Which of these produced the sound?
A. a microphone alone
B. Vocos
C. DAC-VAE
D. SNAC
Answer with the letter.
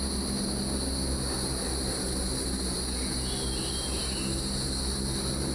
A